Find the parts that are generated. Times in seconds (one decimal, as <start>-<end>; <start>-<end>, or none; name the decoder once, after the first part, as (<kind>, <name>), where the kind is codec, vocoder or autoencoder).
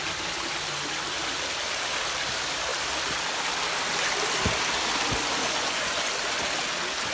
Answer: 5.4-6.1 (vocoder, Vocos)